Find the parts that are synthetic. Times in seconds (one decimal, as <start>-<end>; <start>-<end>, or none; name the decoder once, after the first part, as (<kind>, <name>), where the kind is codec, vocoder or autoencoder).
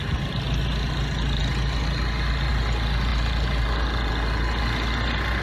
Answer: none